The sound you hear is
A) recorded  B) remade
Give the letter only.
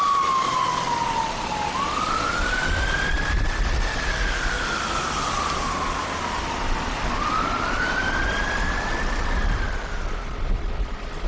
A